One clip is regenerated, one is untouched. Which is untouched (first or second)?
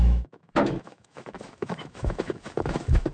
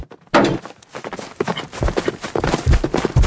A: second